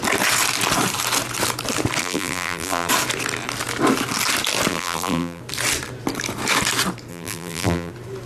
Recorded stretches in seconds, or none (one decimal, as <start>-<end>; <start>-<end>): 0.0-2.0; 2.9-4.7; 5.4-7.1; 7.9-8.3